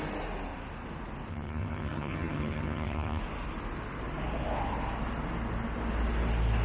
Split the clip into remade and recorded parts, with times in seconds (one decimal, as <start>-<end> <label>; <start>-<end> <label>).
0.0-1.3 recorded; 1.3-3.2 remade; 3.2-6.6 recorded